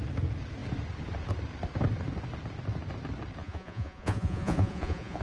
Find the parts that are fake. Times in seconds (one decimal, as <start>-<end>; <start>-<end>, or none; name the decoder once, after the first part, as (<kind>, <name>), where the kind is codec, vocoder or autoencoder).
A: 3.4-5.2 (vocoder, Vocos)